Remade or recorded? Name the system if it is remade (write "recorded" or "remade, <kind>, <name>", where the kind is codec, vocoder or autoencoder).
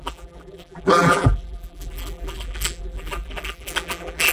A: remade, vocoder, BigVGAN v2